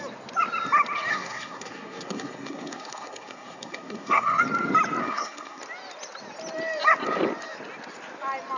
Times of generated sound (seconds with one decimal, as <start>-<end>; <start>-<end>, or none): 1.1-4.4; 5.0-5.6